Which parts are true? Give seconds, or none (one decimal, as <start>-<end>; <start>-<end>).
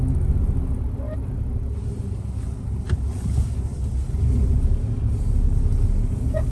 0.0-6.5